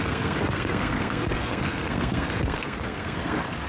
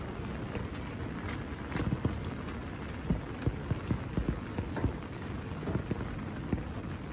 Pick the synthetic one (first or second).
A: first